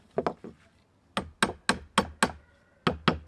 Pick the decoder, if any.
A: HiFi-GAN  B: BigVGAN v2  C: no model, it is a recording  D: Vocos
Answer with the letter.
C